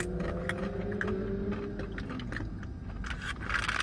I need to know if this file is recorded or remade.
recorded